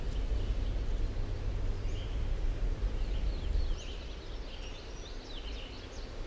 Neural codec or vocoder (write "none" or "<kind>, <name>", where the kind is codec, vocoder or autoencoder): none